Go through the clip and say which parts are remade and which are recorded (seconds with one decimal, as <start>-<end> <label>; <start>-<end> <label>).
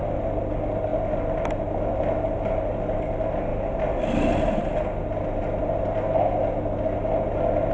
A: 0.0-7.7 recorded